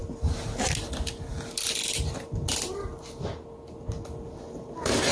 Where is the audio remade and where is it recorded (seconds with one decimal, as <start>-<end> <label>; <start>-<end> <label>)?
0.0-5.1 recorded